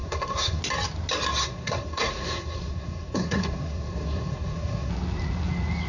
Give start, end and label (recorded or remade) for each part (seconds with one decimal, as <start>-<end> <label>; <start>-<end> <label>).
0.0-0.6 remade; 0.6-1.4 recorded; 1.4-4.9 remade; 4.9-5.9 recorded